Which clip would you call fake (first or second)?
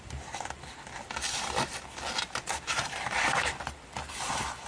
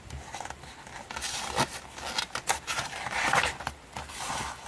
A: first